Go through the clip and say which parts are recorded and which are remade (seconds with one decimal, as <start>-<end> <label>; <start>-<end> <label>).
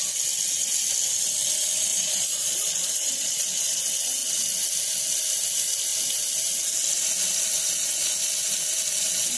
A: 0.0-1.9 recorded; 1.9-3.8 remade; 3.8-9.4 recorded